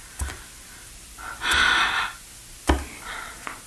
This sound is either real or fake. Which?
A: real